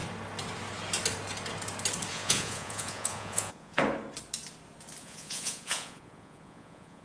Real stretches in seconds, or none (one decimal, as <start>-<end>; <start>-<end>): 0.0-2.1; 3.8-5.0